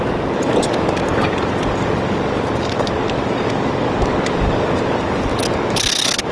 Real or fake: fake